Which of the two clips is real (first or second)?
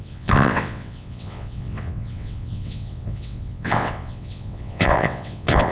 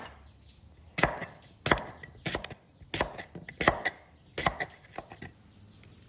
second